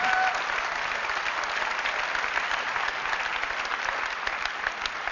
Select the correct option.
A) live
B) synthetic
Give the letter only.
A